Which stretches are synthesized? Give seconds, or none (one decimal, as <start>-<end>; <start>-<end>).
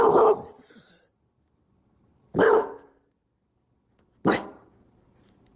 1.6-3.9